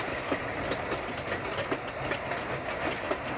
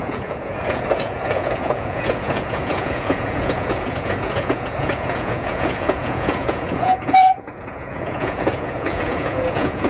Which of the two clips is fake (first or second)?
second